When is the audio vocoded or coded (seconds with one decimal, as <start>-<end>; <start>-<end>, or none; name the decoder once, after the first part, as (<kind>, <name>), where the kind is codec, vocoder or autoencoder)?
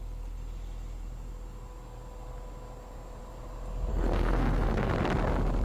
3.9-4.9 (codec, SNAC)